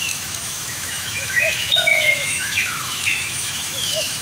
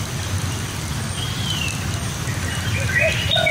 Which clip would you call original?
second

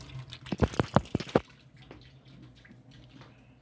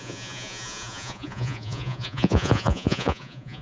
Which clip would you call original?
first